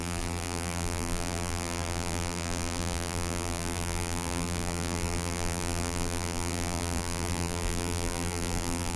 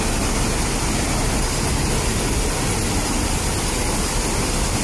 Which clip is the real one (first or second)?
second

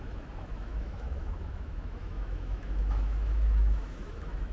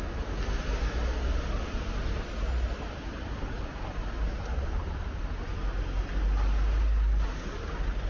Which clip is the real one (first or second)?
second